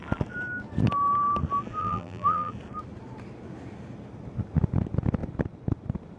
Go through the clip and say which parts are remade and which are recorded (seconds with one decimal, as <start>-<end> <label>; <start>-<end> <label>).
0.0-1.8 recorded; 1.8-2.5 remade; 2.5-6.2 recorded